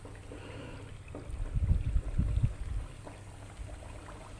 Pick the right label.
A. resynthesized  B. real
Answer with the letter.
B